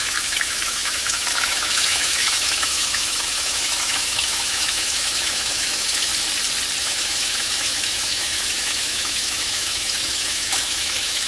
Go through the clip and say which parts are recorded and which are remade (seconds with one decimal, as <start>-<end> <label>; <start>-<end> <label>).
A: 0.0-6.1 remade; 6.1-6.8 recorded; 6.8-11.3 remade